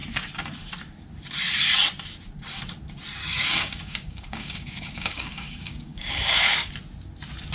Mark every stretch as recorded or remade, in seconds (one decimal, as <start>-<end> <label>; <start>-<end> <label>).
0.0-3.2 recorded; 3.2-6.7 remade; 6.7-7.5 recorded